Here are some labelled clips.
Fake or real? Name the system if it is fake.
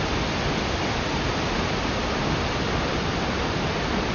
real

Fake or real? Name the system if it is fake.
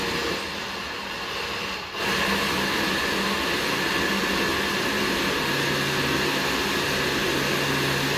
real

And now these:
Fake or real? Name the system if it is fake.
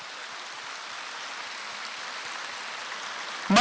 real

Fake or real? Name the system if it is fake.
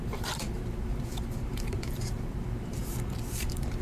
fake, vocoder, BigVGAN v2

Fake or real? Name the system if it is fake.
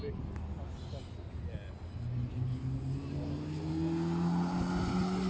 real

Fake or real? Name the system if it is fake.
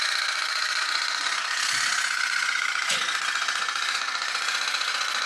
fake, vocoder, Vocos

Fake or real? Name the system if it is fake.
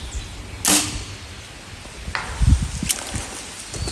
real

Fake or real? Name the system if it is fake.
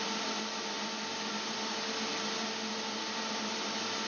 real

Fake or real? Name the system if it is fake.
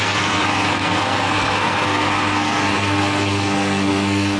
fake, codec, SNAC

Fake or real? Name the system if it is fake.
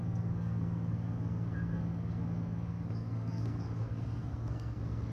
fake, codec, SNAC